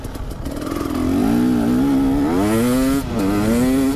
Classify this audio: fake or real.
real